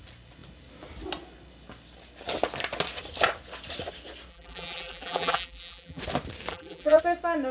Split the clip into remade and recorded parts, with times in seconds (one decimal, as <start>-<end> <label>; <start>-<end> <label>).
0.0-4.3 recorded; 4.3-6.0 remade; 6.0-6.5 recorded; 6.5-7.0 remade; 7.0-7.5 recorded